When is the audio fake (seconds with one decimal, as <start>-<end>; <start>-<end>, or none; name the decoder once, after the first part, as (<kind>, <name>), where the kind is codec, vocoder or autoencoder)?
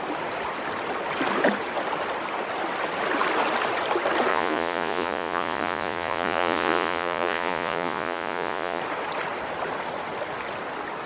4.3-8.8 (vocoder, Vocos)